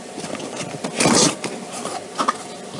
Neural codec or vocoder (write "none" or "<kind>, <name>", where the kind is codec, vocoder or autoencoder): vocoder, BigVGAN v2